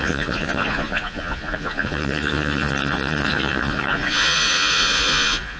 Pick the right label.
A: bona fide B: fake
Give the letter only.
B